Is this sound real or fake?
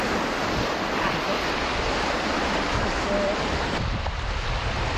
real